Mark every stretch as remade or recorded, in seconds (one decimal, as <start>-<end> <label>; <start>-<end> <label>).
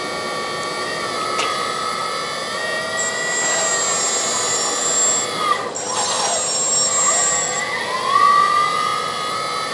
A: 0.0-9.7 recorded